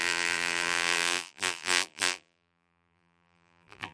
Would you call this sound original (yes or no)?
no